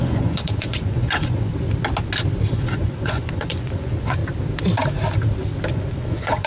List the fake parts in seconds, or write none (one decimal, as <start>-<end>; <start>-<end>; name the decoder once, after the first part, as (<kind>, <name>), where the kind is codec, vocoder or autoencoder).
0.0-1.5 (vocoder, Vocos); 2.5-4.2; 5.7-6.5